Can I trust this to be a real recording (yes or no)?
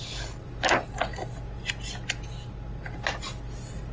yes